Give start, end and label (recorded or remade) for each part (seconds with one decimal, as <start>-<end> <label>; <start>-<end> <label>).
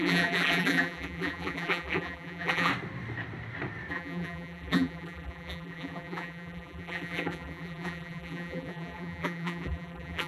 0.0-2.7 remade; 2.7-3.9 recorded; 3.9-10.3 remade